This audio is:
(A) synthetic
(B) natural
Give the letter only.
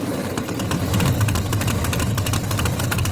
A